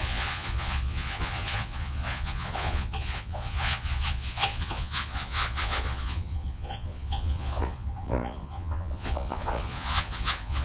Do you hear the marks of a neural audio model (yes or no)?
yes